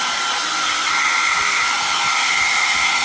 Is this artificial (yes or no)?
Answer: no